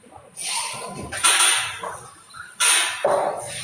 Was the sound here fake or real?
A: real